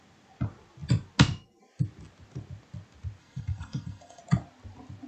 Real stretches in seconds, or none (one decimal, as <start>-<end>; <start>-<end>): 0.0-3.2; 4.2-5.1